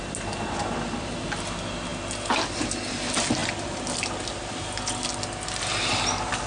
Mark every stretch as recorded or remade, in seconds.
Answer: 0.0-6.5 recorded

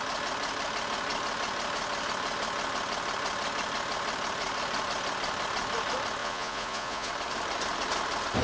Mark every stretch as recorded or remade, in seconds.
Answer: 0.0-6.2 recorded; 6.2-7.1 remade; 7.1-8.4 recorded

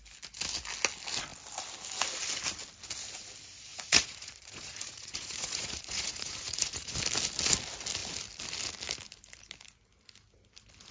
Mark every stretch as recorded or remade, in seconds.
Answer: 0.0-3.7 recorded; 3.7-7.0 remade; 7.0-10.9 recorded